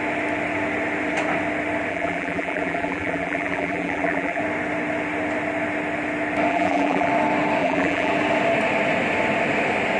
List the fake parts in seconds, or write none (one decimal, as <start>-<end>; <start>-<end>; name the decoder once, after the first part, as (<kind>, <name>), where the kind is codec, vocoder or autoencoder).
1.9-4.4 (vocoder, BigVGAN v2); 6.5-7.1; 7.6-8.1